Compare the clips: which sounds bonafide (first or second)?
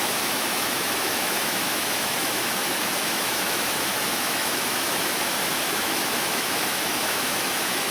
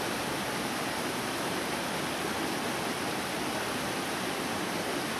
second